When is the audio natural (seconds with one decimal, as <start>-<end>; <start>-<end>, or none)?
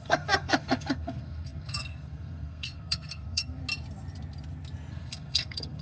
3.6-4.9